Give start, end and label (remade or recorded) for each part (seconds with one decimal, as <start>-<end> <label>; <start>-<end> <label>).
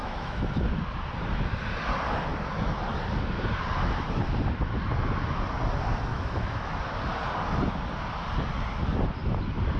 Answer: 0.0-0.5 remade; 0.5-6.1 recorded; 6.1-6.7 remade; 6.7-9.8 recorded